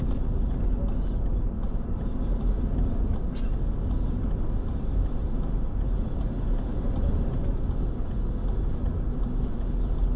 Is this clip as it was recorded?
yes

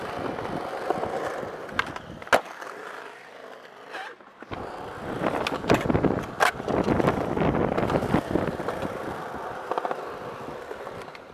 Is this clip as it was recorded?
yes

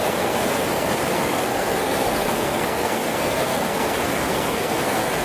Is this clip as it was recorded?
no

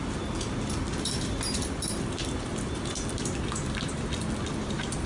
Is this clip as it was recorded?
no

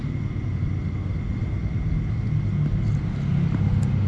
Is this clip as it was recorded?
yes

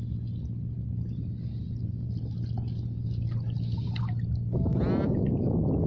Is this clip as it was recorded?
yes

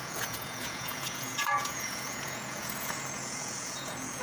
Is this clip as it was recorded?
no